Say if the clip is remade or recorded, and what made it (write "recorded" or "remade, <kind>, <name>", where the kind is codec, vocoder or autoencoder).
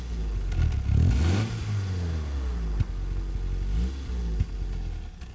recorded